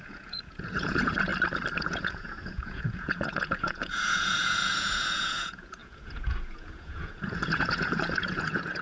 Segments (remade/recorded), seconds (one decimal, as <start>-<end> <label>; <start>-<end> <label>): 0.0-1.3 remade; 1.3-1.8 recorded; 1.8-8.8 remade